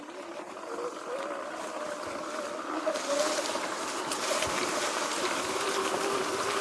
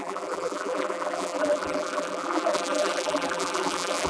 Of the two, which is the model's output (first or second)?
second